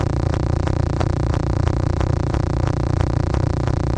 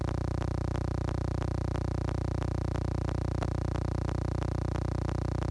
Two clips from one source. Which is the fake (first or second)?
first